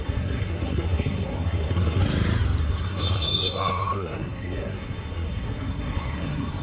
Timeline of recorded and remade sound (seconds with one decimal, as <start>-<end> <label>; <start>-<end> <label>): 0.0-2.0 remade; 2.0-2.6 recorded; 2.6-6.6 remade